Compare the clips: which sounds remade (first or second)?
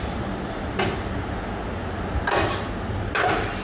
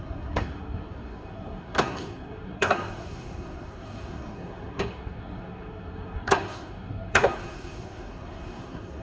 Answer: second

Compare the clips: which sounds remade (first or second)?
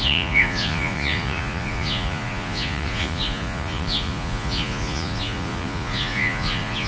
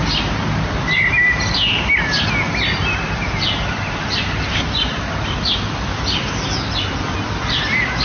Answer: first